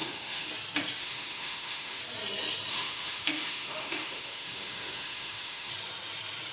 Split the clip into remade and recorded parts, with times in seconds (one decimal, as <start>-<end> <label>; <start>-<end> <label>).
0.0-0.5 remade; 0.5-1.0 recorded; 1.0-2.0 remade; 2.0-2.7 recorded; 2.7-5.7 remade; 5.7-6.5 recorded